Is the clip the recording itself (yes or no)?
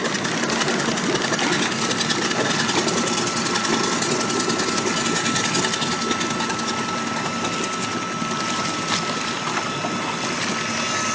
yes